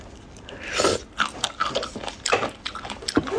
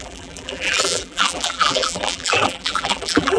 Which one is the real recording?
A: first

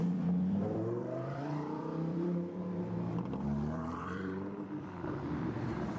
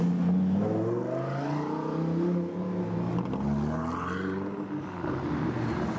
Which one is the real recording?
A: second